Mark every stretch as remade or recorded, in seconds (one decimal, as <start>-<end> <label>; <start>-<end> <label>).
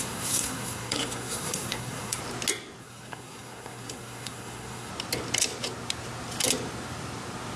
0.0-2.2 remade; 2.2-2.8 recorded; 2.8-4.9 remade; 4.9-7.6 recorded